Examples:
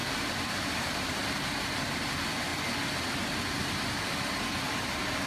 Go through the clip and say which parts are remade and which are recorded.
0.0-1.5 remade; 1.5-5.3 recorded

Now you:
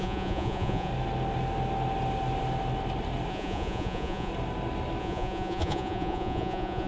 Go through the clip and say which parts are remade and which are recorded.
0.0-0.9 remade; 0.9-3.3 recorded; 3.3-4.3 remade; 4.3-5.0 recorded; 5.0-6.9 remade

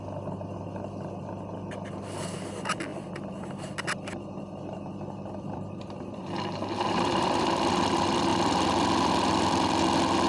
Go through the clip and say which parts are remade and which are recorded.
0.0-2.9 recorded; 2.9-7.7 remade; 7.7-8.3 recorded; 8.3-9.8 remade; 9.8-10.3 recorded

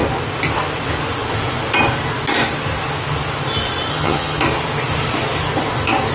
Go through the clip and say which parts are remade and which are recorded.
0.0-3.9 recorded; 3.9-4.4 remade; 4.4-6.1 recorded

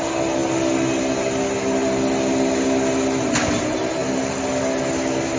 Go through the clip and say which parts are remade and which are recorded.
0.0-5.4 recorded

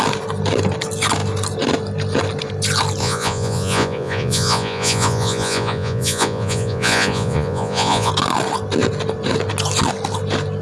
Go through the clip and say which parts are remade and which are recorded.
0.0-3.0 recorded; 3.0-8.1 remade; 8.1-10.6 recorded

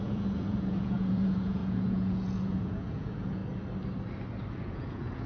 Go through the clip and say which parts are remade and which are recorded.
0.0-3.4 remade; 3.4-4.6 recorded; 4.6-5.3 remade